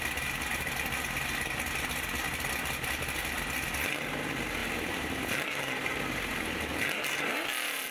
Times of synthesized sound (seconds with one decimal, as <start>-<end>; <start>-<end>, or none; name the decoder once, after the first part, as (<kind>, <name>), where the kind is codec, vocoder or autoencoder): 4.6-6.0 (vocoder, BigVGAN v2)